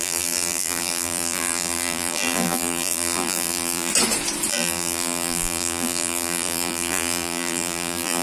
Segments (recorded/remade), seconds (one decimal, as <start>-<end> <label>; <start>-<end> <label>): 0.0-3.9 remade; 3.9-4.5 recorded; 4.5-8.2 remade